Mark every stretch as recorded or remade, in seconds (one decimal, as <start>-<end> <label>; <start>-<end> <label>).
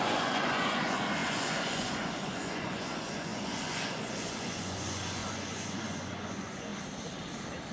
0.0-6.7 remade; 6.7-7.7 recorded